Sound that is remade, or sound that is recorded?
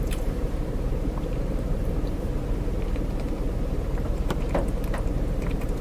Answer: remade